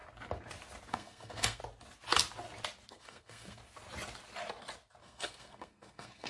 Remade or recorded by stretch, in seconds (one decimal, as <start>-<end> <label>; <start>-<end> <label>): 0.0-0.9 recorded; 0.9-1.6 remade; 1.6-2.9 recorded; 2.9-3.6 remade; 3.6-5.0 recorded; 5.0-6.3 remade